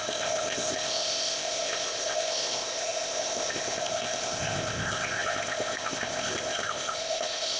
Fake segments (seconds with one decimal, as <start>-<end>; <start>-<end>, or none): 0.0-7.6